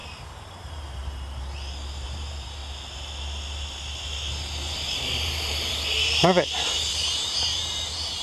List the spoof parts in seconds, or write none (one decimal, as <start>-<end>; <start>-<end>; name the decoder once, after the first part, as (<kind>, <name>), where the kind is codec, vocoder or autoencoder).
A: 1.9-2.6 (vocoder, BigVGAN v2); 4.7-8.2